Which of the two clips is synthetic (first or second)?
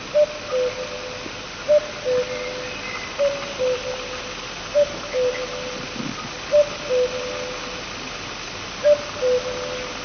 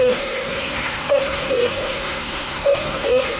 second